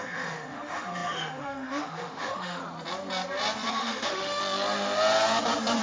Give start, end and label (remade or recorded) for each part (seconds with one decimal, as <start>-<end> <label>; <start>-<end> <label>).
0.0-2.6 remade; 2.6-3.7 recorded; 3.7-4.4 remade; 4.4-5.8 recorded